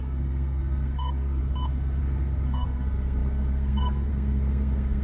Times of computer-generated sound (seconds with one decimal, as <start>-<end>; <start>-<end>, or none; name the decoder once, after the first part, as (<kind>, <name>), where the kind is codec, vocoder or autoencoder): 0.0-1.4 (codec, SNAC); 2.0-5.0